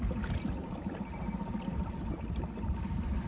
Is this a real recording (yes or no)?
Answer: yes